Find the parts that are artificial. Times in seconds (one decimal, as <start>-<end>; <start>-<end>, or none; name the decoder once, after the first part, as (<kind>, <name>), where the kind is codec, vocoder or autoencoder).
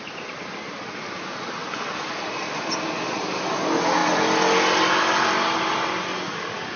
none